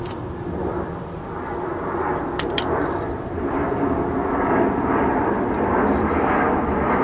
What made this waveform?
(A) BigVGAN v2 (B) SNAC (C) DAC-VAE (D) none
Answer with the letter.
A